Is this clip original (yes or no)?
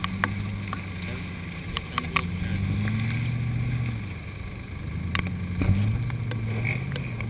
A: yes